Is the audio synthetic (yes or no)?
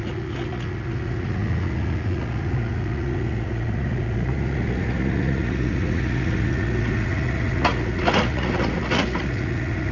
yes